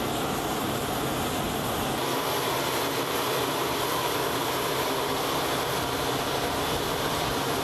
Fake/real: real